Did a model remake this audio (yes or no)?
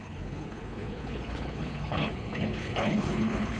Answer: yes